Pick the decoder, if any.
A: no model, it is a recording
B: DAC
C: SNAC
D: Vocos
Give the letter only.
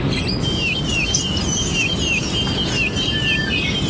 A